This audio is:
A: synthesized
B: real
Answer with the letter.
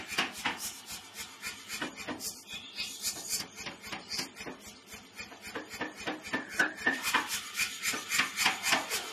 B